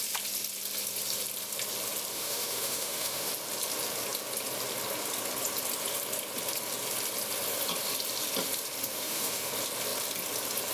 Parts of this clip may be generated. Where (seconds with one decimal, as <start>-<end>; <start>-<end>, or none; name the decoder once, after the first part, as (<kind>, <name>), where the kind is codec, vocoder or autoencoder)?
2.1-3.3 (autoencoder, DAC-VAE); 8.9-9.5